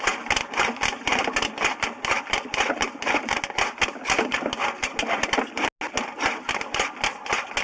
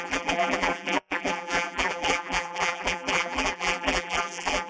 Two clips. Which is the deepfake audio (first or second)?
second